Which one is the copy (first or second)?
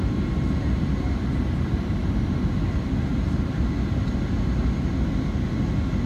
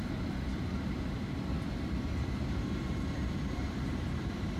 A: second